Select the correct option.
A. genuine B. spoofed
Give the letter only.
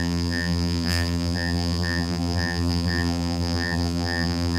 B